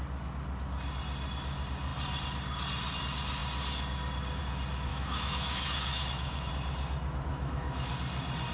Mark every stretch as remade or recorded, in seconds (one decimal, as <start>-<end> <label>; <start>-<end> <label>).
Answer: 0.0-4.9 recorded; 4.9-6.5 remade; 6.5-7.3 recorded; 7.3-7.9 remade; 7.9-8.5 recorded